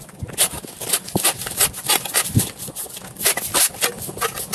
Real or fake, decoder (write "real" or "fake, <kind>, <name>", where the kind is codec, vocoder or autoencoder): real